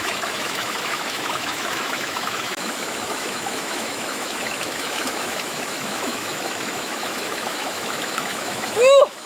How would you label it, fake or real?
fake